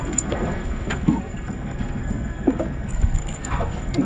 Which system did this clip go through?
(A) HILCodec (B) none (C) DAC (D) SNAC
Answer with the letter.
D